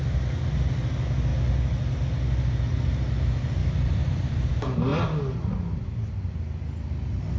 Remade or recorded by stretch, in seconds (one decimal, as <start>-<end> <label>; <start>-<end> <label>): 0.0-3.6 recorded; 3.6-4.5 remade; 4.5-7.4 recorded